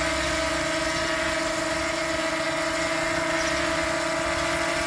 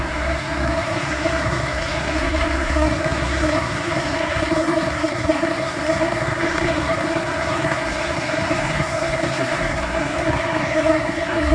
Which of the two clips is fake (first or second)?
second